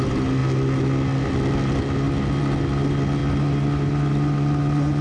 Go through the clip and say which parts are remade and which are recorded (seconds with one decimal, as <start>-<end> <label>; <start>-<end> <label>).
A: 0.0-5.0 recorded